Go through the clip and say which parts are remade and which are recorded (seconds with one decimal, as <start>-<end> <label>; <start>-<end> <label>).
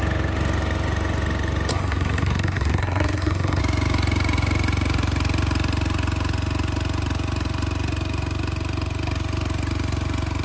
0.0-1.7 recorded; 1.7-3.6 remade; 3.6-10.4 recorded